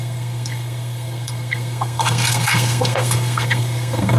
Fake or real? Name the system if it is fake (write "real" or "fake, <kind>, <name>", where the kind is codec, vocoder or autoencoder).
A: fake, codec, SNAC